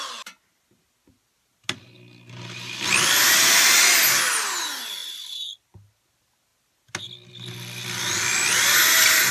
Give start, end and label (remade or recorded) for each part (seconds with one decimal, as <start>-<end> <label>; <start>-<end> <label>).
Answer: 0.0-9.3 recorded